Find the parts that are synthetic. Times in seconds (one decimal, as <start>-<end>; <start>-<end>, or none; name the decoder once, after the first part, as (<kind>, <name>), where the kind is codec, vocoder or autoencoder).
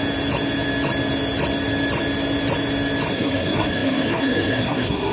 3.1-5.1 (codec, SNAC)